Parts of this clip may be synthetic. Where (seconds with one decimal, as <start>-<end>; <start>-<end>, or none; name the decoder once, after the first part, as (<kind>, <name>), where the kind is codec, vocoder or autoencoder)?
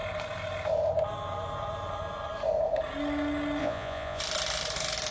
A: 3.6-4.2 (vocoder, Vocos)